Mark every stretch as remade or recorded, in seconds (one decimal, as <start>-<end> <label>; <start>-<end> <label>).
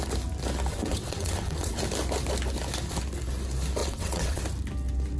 0.0-0.7 recorded; 0.7-1.8 remade; 1.8-3.8 recorded; 3.8-4.4 remade; 4.4-5.2 recorded